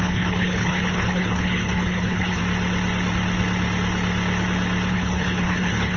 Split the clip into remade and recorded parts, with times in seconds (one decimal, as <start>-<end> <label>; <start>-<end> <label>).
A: 0.0-2.4 remade; 2.4-4.9 recorded; 4.9-6.0 remade